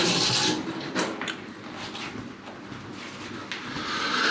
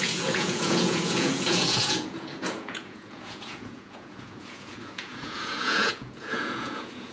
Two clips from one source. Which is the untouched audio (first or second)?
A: first